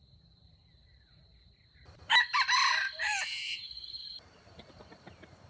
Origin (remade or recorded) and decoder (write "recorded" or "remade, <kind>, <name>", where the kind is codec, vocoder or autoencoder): remade, vocoder, BigVGAN v2